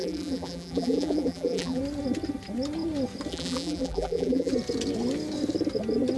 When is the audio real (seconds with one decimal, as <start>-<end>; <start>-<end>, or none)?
1.8-3.3; 4.5-6.2